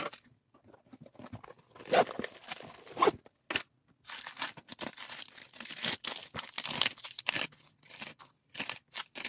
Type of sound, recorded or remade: recorded